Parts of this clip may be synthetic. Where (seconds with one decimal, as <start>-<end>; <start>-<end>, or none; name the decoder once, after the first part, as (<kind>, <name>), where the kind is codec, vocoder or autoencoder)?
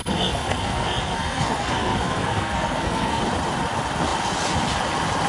0.0-3.2 (codec, SNAC)